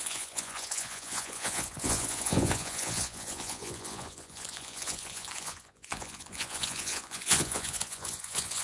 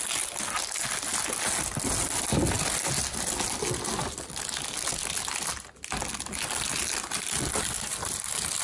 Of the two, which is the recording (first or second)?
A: second